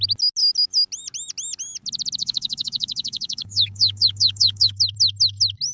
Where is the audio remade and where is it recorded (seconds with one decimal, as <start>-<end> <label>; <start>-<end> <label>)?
0.0-2.2 recorded; 2.2-4.8 remade; 4.8-5.7 recorded